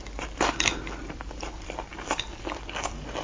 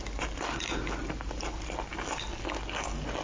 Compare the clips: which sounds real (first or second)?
second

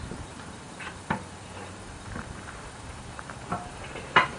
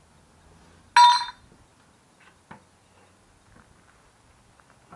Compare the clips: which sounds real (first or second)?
second